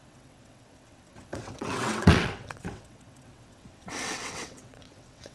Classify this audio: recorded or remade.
remade